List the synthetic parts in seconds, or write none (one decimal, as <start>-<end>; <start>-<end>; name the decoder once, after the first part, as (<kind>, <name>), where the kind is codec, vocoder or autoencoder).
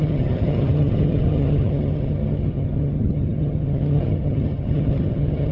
0.0-5.5 (vocoder, HiFi-GAN)